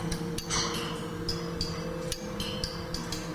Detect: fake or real real